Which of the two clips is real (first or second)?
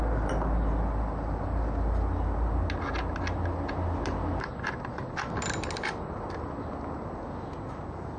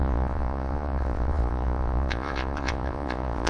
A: first